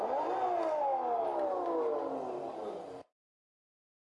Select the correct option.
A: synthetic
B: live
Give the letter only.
B